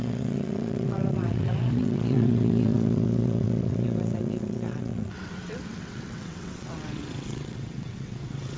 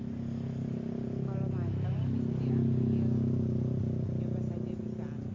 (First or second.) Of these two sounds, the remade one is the first